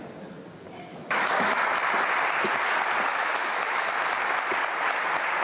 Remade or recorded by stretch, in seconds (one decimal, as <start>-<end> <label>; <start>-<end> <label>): 0.0-0.9 recorded; 0.9-1.7 remade; 1.7-3.1 recorded; 3.1-4.0 remade; 4.0-5.4 recorded